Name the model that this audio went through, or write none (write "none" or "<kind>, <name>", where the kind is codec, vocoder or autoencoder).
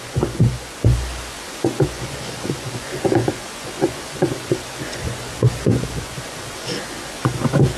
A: vocoder, Vocos